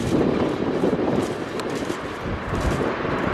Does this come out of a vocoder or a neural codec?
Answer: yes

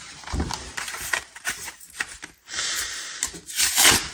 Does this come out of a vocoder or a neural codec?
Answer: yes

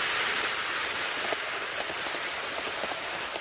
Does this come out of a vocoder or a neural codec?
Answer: no